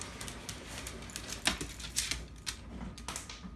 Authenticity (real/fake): real